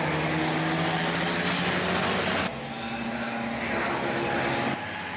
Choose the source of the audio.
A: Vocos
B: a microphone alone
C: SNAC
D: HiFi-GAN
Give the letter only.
B